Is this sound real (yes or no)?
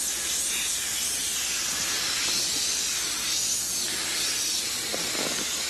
yes